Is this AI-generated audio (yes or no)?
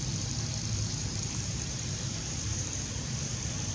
yes